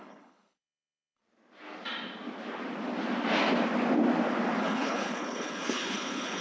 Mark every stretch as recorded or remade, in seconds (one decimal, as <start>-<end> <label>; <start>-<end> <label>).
0.0-1.2 remade; 1.2-4.6 recorded; 4.6-6.4 remade